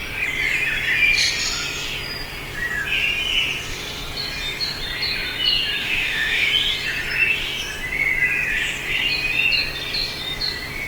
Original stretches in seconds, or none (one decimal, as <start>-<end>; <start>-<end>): 0.0-5.8; 6.5-10.9